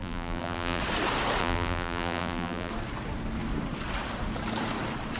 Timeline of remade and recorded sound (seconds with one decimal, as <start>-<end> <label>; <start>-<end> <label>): 0.0-0.8 remade; 0.8-1.4 recorded; 1.4-2.7 remade; 2.7-5.2 recorded